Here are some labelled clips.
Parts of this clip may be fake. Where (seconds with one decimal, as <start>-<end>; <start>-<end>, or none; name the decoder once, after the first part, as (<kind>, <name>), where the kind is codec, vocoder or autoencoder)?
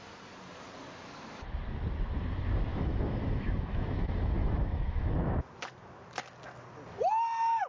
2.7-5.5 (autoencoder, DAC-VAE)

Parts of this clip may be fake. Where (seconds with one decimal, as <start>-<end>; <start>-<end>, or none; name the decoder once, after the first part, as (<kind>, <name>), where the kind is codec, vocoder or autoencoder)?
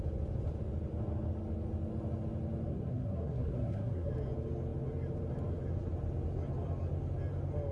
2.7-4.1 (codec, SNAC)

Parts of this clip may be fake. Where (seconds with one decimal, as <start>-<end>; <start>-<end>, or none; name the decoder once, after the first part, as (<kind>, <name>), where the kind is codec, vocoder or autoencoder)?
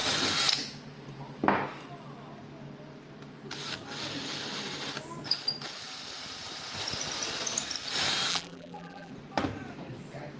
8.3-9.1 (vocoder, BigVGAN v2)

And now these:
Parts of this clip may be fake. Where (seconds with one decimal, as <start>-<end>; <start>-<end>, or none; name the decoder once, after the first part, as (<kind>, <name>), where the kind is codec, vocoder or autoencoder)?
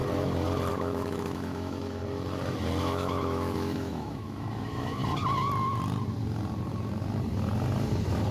0.7-2.0 (autoencoder, DAC-VAE); 2.8-5.0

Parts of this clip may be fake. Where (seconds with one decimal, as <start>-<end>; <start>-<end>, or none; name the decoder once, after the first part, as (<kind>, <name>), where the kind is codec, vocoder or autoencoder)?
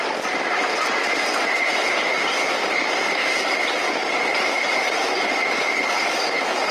3.8-5.4 (vocoder, BigVGAN v2)